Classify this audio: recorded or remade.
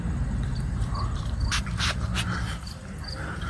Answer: remade